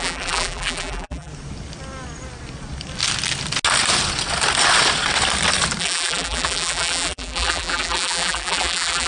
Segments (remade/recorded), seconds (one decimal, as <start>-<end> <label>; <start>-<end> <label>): 0.0-1.3 remade; 1.3-5.8 recorded; 5.8-9.1 remade